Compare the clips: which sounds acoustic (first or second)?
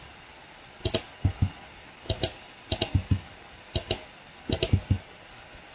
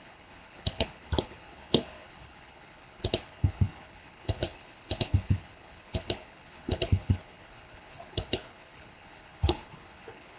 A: first